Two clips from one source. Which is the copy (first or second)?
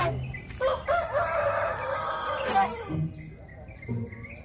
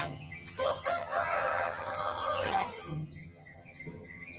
second